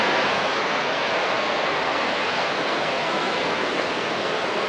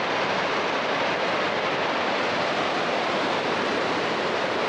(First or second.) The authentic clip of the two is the second